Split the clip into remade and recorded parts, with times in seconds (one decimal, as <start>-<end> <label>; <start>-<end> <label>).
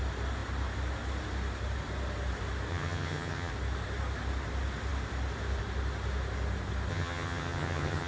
0.0-2.7 recorded; 2.7-3.5 remade; 3.5-6.9 recorded; 6.9-8.1 remade